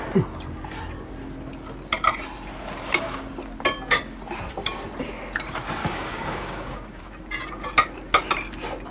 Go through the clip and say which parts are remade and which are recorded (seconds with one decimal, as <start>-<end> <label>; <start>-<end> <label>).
0.0-5.8 recorded; 5.8-7.0 remade; 7.0-8.9 recorded